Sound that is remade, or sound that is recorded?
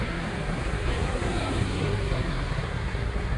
remade